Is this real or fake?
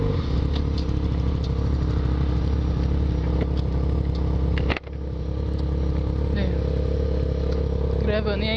real